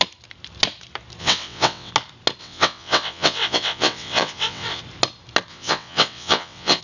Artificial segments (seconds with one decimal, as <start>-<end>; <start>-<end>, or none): 1.2-1.9; 2.4-4.8; 5.5-6.8